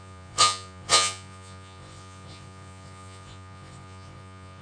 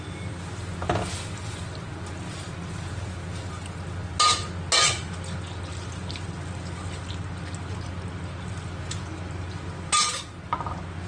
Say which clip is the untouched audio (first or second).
second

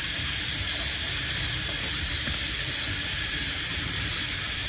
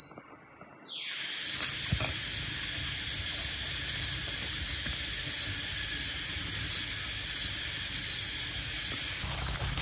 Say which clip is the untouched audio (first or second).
second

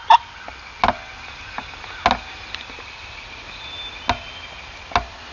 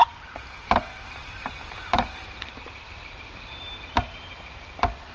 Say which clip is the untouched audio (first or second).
first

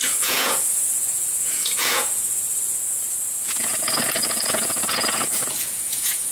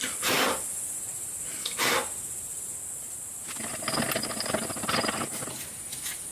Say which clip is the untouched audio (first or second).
second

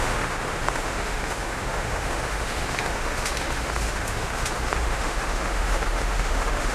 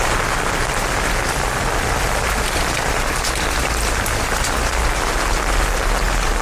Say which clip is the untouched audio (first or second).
second